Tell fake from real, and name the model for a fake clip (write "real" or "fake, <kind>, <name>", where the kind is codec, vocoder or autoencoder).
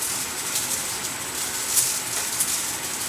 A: real